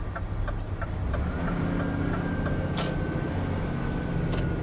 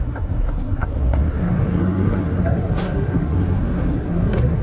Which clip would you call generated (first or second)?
second